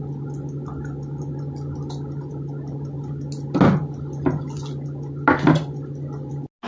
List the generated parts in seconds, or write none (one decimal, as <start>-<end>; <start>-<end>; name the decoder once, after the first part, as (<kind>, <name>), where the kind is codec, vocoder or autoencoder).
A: none